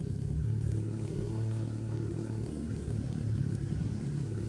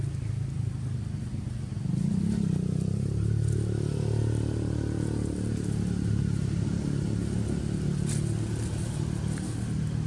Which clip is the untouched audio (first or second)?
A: second